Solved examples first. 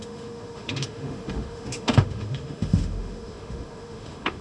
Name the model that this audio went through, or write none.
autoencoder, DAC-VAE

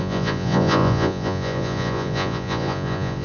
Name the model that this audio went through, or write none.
vocoder, Vocos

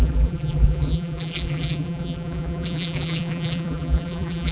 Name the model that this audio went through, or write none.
vocoder, BigVGAN v2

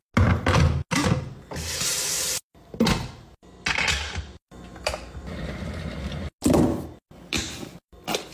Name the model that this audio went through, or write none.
none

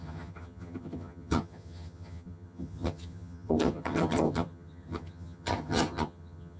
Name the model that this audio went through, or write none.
vocoder, HiFi-GAN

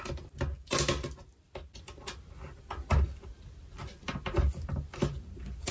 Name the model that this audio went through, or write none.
none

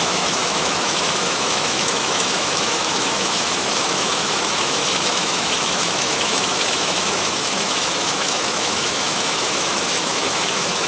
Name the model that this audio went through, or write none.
autoencoder, DAC-VAE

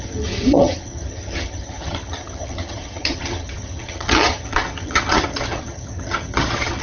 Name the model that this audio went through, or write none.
vocoder, HiFi-GAN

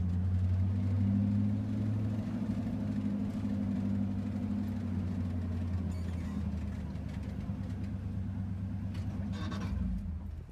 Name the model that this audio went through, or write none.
none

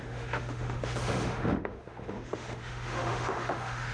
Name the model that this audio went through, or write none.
autoencoder, DAC-VAE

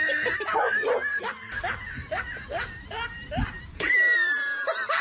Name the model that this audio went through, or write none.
none